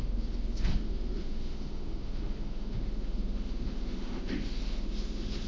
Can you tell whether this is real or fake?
fake